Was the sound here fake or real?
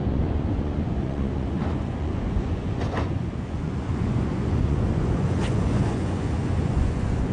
fake